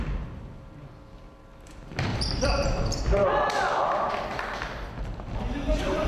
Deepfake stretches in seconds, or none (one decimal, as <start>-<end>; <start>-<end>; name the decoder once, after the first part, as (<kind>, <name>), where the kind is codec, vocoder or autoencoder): 2.1-4.1 (vocoder, BigVGAN v2)